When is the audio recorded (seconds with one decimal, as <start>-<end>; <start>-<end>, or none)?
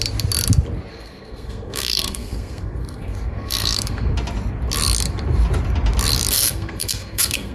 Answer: 0.0-0.9; 4.1-6.3